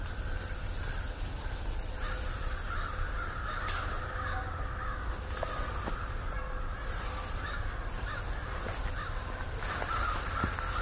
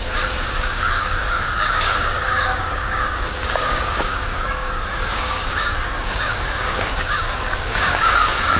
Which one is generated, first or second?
second